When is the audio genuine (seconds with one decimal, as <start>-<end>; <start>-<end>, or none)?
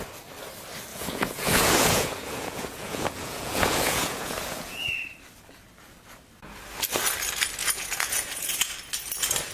0.0-0.9; 4.9-7.6; 8.7-9.5